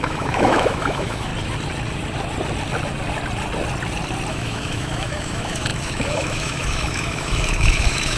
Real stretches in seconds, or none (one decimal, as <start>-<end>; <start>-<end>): 1.3-4.3